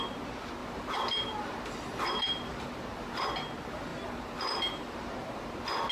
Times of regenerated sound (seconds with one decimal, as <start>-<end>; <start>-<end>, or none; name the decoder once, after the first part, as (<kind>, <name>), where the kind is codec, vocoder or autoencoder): 0.6-3.2 (vocoder, BigVGAN v2); 3.9-5.5